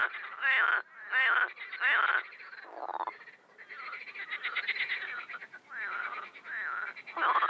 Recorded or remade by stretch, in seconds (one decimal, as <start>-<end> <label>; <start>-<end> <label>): 0.0-7.5 recorded